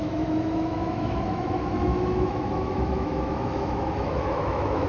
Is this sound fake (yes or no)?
yes